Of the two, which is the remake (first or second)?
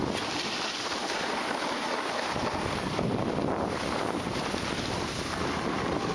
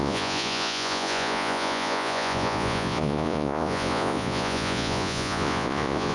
second